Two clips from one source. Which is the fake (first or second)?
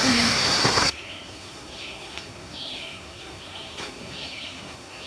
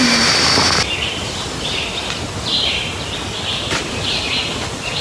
first